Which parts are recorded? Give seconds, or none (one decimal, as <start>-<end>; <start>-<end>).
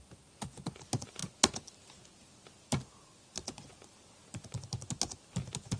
0.0-5.8